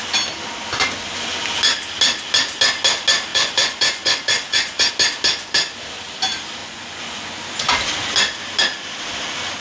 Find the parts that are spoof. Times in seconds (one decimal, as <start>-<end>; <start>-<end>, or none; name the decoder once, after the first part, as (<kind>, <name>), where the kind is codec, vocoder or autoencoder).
3.3-4.9 (vocoder, Vocos); 6.6-7.4